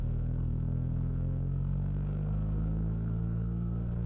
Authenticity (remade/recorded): remade